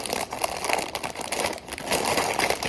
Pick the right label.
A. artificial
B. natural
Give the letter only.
A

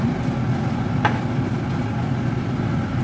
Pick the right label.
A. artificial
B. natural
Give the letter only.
B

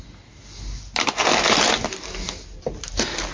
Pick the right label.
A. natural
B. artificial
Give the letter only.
A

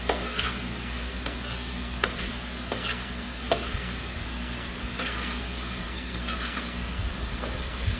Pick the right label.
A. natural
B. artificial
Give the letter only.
B